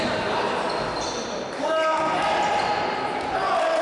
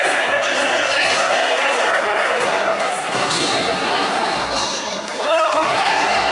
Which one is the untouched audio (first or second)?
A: first